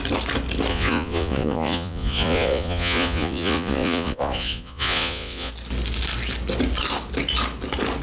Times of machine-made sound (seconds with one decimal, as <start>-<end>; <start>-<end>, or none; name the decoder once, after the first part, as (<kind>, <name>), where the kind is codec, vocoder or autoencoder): 0.7-5.5 (vocoder, Vocos)